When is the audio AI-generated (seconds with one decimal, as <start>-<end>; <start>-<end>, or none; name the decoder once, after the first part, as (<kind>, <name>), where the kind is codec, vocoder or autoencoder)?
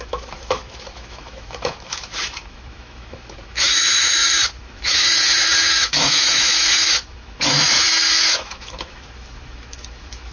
0.0-10.3 (autoencoder, DAC-VAE)